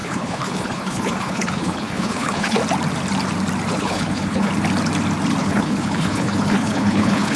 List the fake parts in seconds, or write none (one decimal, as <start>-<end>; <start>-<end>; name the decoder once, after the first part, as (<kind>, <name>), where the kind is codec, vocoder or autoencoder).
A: 0.0-2.6 (codec, HILCodec); 3.7-4.5; 5.4-7.4